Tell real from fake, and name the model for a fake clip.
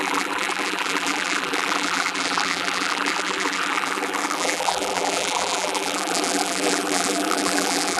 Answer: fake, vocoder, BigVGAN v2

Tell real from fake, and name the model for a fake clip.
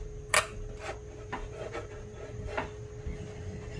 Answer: real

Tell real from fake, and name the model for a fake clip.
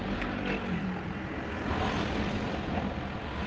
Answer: real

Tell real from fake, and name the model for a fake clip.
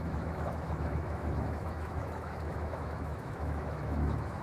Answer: fake, autoencoder, DAC-VAE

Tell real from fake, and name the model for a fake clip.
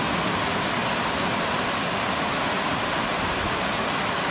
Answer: real